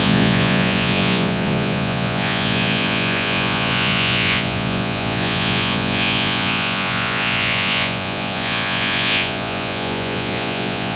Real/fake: fake